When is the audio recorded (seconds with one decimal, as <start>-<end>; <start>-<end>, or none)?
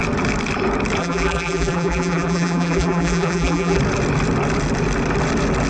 0.0-1.0; 3.8-5.7